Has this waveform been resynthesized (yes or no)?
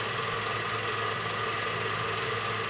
no